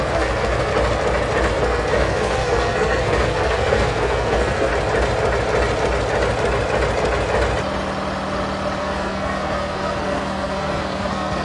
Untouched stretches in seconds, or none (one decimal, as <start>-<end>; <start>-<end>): 0.7-1.5; 4.7-8.8